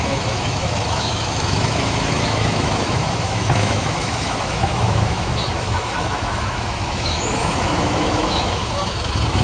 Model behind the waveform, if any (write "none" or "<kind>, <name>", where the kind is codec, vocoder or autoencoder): autoencoder, DAC-VAE